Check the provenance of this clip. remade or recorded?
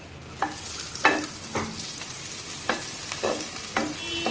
recorded